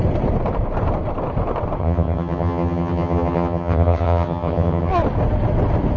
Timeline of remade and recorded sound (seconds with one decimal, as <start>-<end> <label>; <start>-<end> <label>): 0.0-1.8 recorded; 1.8-4.9 remade; 4.9-6.0 recorded